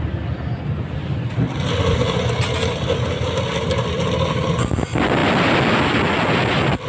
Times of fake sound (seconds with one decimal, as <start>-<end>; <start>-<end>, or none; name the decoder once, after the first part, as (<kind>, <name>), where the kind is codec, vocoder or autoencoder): none